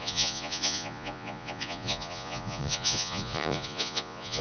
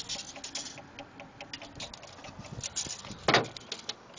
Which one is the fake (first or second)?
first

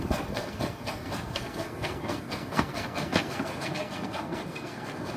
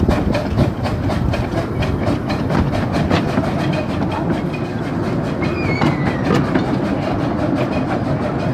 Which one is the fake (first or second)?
first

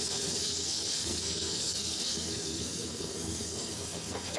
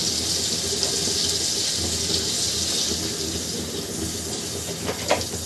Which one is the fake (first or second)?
first